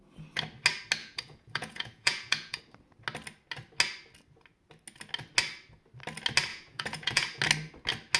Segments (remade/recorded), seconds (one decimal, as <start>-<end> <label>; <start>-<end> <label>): 0.0-1.0 recorded; 1.0-2.6 remade; 2.6-6.5 recorded; 6.5-7.4 remade; 7.4-8.2 recorded